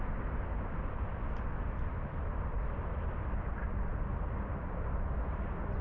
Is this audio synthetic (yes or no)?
yes